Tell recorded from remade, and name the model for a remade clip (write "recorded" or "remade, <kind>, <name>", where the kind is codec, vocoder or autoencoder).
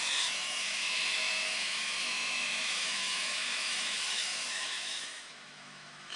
remade, autoencoder, DAC-VAE